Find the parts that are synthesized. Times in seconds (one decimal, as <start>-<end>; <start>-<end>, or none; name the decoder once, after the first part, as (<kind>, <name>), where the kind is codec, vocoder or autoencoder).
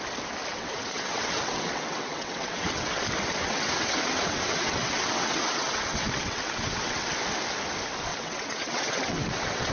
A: 0.5-3.0 (vocoder, WaveNeXt); 3.4-7.1; 8.1-9.7